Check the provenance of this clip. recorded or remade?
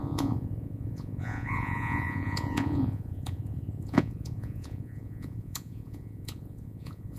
remade